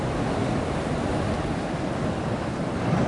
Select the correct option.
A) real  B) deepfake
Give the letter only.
A